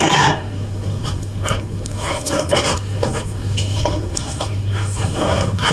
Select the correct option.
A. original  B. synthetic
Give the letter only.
B